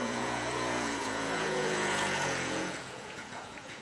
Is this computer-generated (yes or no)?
yes